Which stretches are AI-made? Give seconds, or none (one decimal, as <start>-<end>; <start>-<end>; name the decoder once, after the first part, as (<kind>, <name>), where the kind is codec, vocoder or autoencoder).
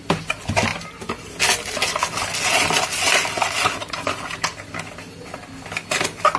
none